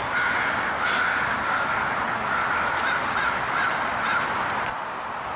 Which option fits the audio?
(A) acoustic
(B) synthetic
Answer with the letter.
A